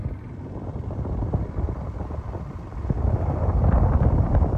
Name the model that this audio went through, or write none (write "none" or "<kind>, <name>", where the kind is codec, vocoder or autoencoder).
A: vocoder, BigVGAN v2